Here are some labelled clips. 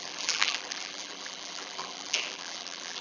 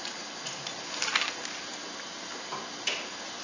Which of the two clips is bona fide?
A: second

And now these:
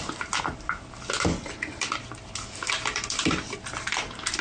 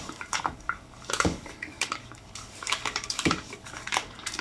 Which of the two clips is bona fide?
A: first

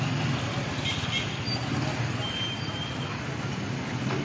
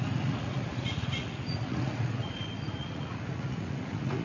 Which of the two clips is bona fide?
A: first